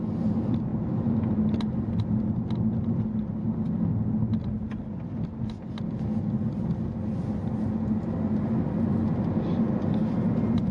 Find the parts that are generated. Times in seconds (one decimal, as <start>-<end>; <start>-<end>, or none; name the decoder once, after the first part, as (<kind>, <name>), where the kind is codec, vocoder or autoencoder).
none